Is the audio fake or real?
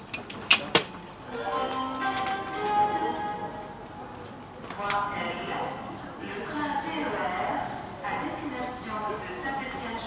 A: real